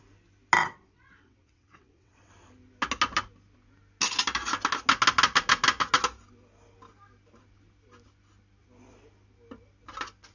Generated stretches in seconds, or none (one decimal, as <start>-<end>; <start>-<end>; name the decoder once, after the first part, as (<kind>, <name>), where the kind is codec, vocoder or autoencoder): 0.6-2.3 (vocoder, WaveNeXt)